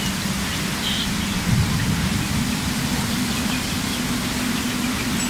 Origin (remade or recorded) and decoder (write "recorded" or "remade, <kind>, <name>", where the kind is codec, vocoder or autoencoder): recorded